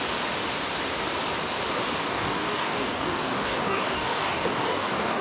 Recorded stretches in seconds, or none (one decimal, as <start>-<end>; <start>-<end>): 0.0-2.0